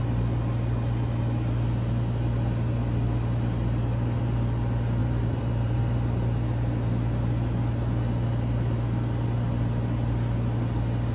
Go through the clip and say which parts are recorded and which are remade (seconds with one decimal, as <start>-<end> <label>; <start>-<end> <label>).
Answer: 0.0-5.0 recorded; 5.0-5.8 remade; 5.8-11.1 recorded